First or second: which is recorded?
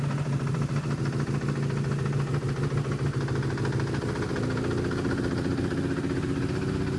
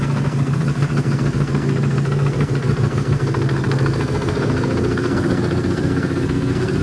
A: first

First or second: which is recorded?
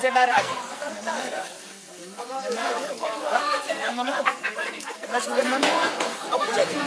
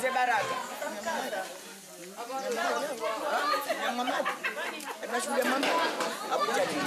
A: second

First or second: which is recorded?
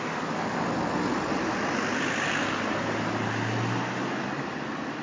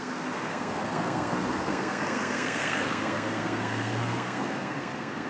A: first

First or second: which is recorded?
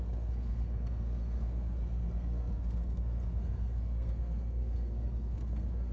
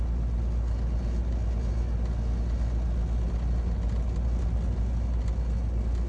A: second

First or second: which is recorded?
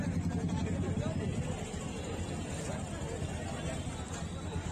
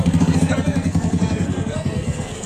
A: first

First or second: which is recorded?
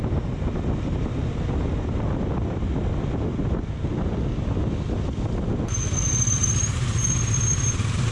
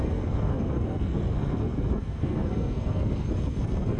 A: first